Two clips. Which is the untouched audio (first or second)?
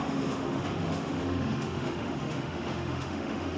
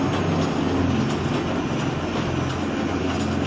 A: second